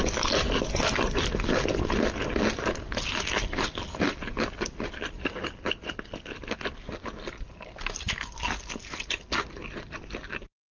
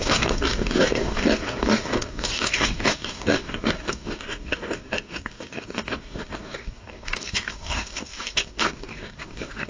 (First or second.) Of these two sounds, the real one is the first